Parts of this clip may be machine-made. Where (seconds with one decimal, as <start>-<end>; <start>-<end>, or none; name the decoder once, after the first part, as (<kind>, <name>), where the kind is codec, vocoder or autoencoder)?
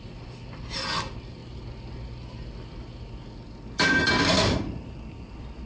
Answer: none